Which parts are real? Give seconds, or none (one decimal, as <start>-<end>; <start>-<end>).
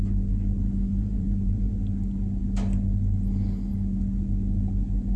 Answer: 0.0-0.9; 1.7-5.2